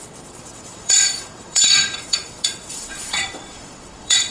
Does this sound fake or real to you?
fake